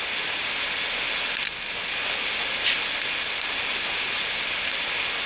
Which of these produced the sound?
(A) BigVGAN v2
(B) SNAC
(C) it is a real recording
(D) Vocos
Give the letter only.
C